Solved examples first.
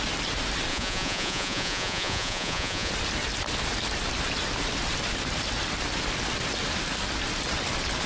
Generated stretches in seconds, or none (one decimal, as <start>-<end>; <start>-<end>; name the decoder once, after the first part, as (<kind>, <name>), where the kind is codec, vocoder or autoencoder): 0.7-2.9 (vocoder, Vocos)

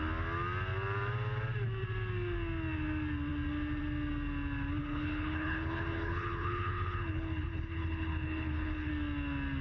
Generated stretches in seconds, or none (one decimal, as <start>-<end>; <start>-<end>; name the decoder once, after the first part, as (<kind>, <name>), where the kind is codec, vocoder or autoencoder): 4.8-8.9 (codec, HILCodec)

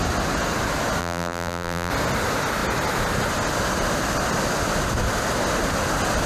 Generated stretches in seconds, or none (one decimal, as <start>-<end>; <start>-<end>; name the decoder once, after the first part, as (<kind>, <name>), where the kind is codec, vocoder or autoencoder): 1.0-1.9 (vocoder, BigVGAN v2)

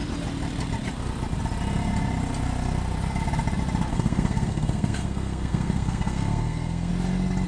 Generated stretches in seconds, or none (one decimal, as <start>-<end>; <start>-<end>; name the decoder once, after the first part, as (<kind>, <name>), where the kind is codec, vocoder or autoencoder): 3.9-6.9 (codec, SNAC)

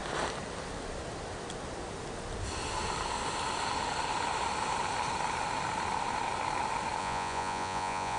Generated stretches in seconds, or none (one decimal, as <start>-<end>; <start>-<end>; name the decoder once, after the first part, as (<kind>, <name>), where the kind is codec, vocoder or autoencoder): 7.0-8.2 (vocoder, Vocos)